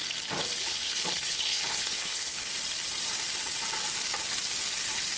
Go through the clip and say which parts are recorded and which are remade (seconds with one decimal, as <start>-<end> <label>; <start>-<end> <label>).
0.0-0.6 recorded; 0.6-2.5 remade; 2.5-5.2 recorded